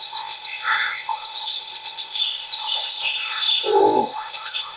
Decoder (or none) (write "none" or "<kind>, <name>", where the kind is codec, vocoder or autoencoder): codec, ZipCodec